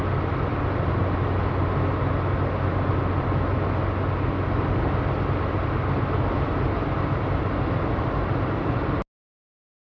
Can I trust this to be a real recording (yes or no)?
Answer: yes